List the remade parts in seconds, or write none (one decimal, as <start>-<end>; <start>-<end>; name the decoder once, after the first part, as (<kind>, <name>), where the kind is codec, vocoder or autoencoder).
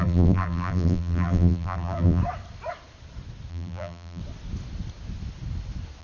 0.0-2.2 (vocoder, BigVGAN v2); 3.5-4.2